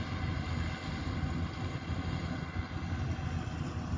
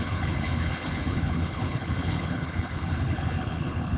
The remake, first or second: second